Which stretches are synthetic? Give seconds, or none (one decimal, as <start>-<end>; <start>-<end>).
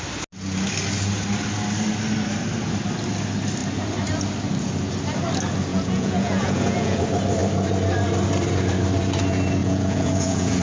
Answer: 5.7-7.0; 9.6-10.6